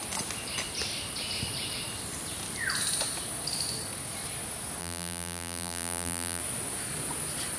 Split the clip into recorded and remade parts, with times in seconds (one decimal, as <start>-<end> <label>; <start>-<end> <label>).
0.0-4.8 recorded; 4.8-6.4 remade; 6.4-7.6 recorded